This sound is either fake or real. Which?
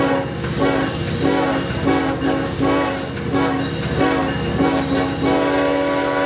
real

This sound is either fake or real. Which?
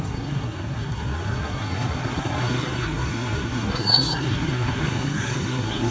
fake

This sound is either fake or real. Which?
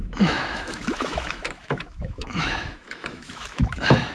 fake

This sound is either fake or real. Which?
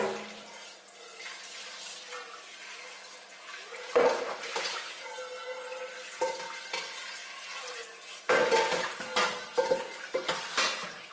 real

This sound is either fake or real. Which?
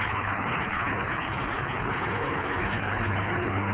fake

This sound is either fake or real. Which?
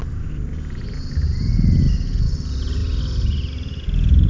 real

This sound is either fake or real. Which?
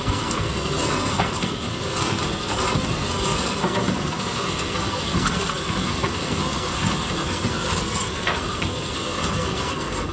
fake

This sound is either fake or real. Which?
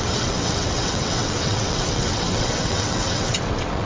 fake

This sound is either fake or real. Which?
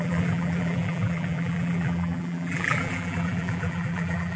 fake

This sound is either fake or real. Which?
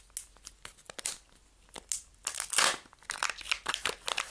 real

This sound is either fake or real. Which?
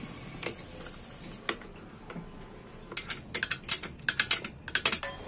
real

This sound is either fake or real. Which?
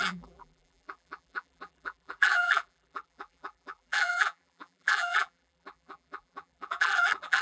fake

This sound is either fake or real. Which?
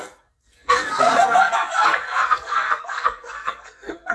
fake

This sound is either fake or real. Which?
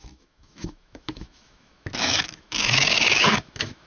fake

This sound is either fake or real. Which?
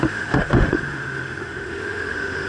fake